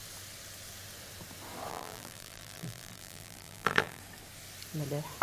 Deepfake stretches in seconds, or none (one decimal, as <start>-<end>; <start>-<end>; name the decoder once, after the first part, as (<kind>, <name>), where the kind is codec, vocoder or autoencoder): 1.7-4.0 (vocoder, BigVGAN v2)